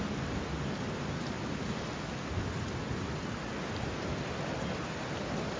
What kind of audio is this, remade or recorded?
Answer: recorded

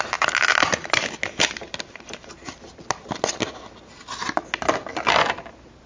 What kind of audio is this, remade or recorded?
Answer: recorded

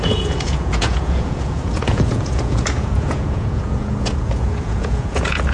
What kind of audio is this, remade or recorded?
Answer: remade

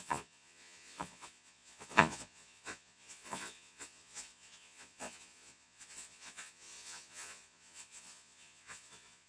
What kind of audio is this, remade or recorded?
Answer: remade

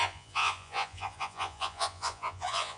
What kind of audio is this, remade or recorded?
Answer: remade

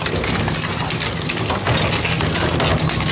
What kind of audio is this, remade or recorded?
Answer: recorded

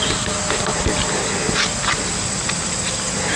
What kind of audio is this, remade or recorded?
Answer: recorded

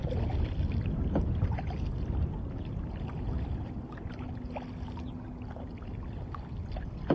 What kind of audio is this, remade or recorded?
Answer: recorded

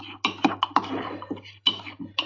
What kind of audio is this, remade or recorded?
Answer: recorded